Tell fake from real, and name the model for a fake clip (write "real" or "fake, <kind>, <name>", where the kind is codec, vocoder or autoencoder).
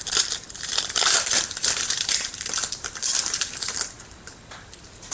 fake, vocoder, BigVGAN v2